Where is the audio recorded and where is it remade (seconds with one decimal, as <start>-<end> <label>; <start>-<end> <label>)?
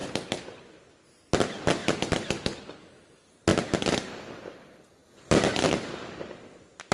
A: 0.0-6.9 recorded